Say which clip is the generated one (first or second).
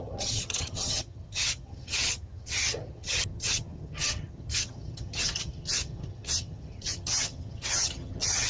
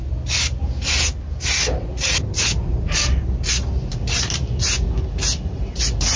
first